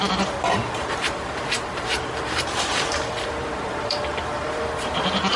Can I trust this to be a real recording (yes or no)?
no